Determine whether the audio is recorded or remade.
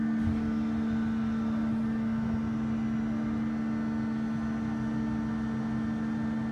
recorded